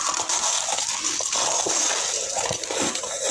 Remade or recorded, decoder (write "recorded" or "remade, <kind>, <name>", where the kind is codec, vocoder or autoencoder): recorded